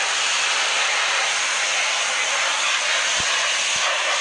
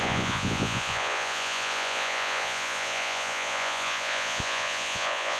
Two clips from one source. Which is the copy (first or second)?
second